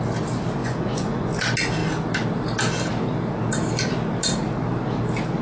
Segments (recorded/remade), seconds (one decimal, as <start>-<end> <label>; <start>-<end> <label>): 0.0-0.6 recorded; 0.6-1.3 remade; 1.3-5.4 recorded